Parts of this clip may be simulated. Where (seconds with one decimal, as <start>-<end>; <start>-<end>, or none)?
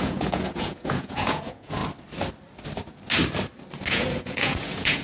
0.0-1.8; 3.9-5.0